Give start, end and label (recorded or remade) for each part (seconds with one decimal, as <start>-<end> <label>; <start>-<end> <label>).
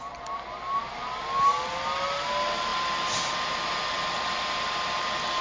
0.0-5.4 recorded